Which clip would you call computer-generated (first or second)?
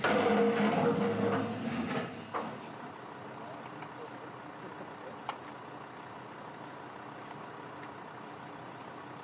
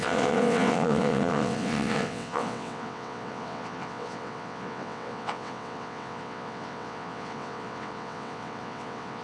second